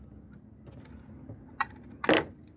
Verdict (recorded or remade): recorded